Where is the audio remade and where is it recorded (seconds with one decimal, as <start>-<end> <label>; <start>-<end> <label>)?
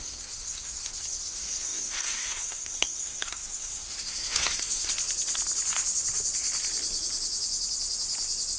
0.0-4.9 remade; 4.9-8.6 recorded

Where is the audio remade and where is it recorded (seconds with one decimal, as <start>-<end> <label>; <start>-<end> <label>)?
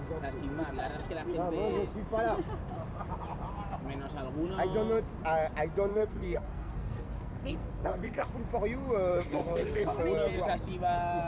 0.0-5.9 recorded; 5.9-8.3 remade; 8.3-9.1 recorded; 9.1-10.0 remade; 10.0-11.3 recorded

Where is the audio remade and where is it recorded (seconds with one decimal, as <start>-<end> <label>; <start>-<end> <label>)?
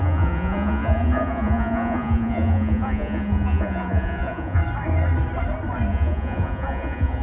0.0-4.6 remade; 4.6-5.9 recorded; 5.9-7.2 remade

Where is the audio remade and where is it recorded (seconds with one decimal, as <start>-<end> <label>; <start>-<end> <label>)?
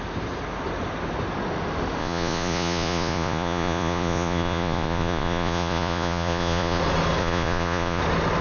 0.0-2.0 recorded; 2.0-6.8 remade; 6.8-7.2 recorded; 7.2-8.0 remade; 8.0-8.4 recorded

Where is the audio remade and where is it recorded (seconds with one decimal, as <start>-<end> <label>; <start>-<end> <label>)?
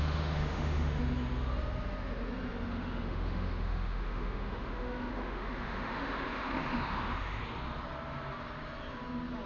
0.0-1.0 remade; 1.0-2.7 recorded; 2.7-7.4 remade; 7.4-9.5 recorded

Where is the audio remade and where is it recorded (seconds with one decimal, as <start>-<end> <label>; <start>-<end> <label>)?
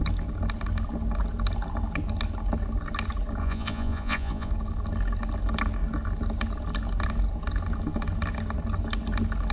0.0-3.4 recorded; 3.4-4.5 remade; 4.5-9.5 recorded